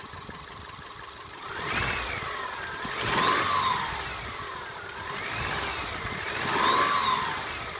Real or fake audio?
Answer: fake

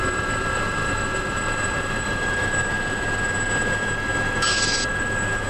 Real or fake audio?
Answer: fake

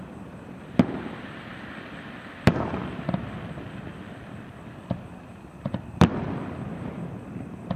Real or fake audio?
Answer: fake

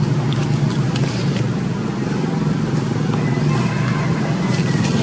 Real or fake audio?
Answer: real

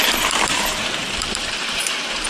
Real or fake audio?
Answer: fake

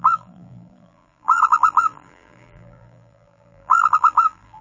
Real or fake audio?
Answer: fake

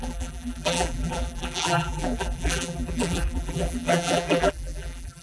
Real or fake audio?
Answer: fake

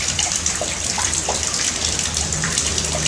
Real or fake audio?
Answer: fake